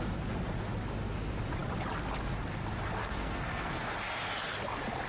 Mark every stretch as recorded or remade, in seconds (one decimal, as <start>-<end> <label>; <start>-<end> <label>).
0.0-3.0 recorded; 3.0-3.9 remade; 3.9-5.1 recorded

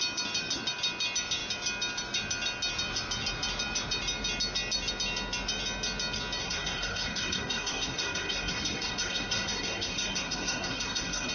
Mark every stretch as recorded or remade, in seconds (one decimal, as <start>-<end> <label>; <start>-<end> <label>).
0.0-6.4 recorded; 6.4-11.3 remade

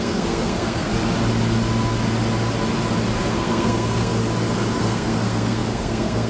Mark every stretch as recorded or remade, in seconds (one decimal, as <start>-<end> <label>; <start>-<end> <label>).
0.0-0.9 remade; 0.9-3.3 recorded; 3.3-4.1 remade; 4.1-4.8 recorded; 4.8-6.3 remade